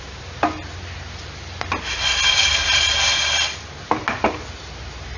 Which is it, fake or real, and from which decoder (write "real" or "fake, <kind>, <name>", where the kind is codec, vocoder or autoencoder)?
real